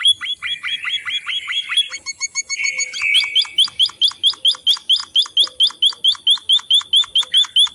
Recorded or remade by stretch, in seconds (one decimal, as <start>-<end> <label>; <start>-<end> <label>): 0.0-7.7 recorded